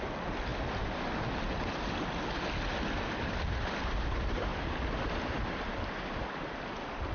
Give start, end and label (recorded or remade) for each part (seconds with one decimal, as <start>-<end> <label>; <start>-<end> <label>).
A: 0.0-4.5 recorded; 4.5-6.6 remade; 6.6-7.1 recorded